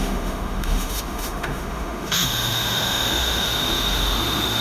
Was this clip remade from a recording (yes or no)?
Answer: yes